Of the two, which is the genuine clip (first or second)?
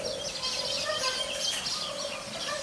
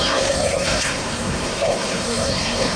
first